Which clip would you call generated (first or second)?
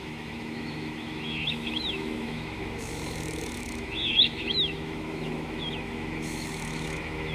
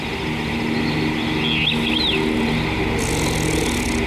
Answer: first